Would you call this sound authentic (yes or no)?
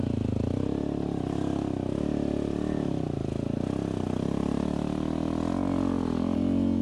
yes